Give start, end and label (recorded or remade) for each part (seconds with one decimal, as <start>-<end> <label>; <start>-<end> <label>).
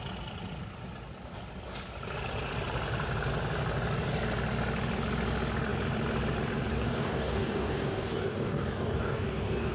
0.0-6.7 recorded; 6.7-9.7 remade